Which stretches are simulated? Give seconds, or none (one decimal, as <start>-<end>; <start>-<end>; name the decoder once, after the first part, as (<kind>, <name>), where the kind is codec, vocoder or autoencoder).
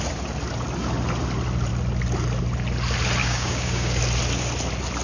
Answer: 3.2-4.0 (codec, DAC)